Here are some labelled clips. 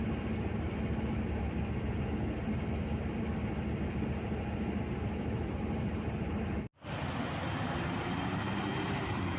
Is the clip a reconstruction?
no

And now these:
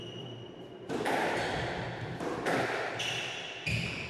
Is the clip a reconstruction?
no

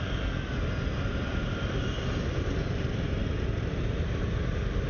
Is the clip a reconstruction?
no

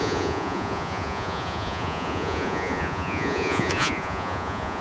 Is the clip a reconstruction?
yes